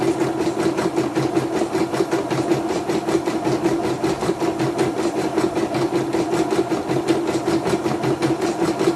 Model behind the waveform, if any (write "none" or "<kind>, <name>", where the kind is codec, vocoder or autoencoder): none